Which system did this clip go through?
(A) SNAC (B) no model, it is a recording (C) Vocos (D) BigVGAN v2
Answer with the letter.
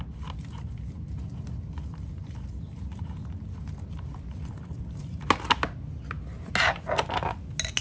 B